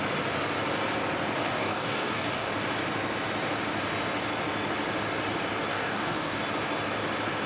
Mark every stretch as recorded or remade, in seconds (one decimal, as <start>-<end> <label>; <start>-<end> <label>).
0.0-1.4 recorded; 1.4-2.5 remade; 2.5-5.7 recorded; 5.7-6.4 remade; 6.4-7.5 recorded

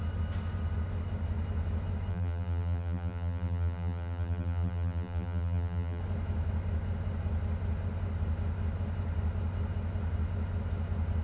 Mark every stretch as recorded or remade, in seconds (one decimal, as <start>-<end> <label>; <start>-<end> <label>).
0.0-2.1 recorded; 2.1-6.0 remade; 6.0-11.2 recorded

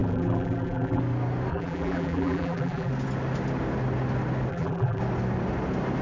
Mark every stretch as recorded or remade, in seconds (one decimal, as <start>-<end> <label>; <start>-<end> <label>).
0.0-1.0 remade; 1.0-1.5 recorded; 1.5-2.9 remade; 2.9-4.5 recorded; 4.5-5.0 remade; 5.0-6.0 recorded

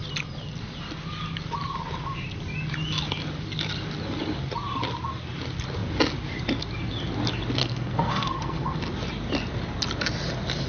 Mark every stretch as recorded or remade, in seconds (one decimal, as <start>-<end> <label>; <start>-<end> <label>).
0.0-7.6 recorded; 7.6-8.8 remade; 8.8-10.7 recorded

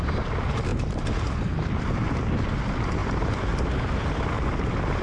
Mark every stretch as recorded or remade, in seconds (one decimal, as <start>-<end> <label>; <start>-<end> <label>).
0.0-5.0 recorded

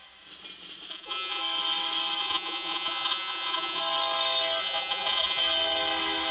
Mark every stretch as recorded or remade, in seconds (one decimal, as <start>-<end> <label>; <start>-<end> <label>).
0.0-0.9 recorded; 0.9-1.4 remade; 1.4-2.2 recorded; 2.2-3.8 remade; 3.8-4.6 recorded; 4.6-5.4 remade; 5.4-6.3 recorded